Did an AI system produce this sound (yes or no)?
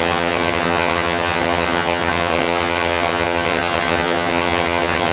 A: yes